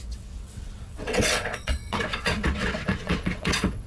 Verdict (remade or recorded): remade